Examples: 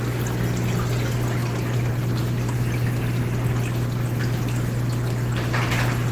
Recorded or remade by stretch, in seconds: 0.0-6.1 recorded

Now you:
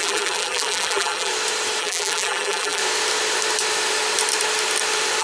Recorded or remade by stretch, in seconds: 0.0-1.3 remade; 1.3-1.8 recorded; 1.8-2.8 remade; 2.8-5.2 recorded

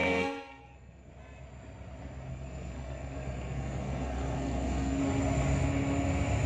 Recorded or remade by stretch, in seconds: 0.0-1.1 remade; 1.1-2.3 recorded; 2.3-5.0 remade; 5.0-6.5 recorded